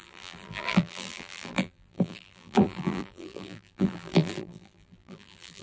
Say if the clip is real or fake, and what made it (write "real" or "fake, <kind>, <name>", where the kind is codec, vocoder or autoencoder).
fake, vocoder, BigVGAN v2